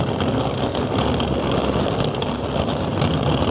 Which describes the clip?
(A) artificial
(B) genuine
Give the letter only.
B